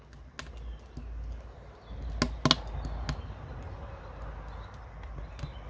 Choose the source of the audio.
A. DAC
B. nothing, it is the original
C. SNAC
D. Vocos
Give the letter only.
B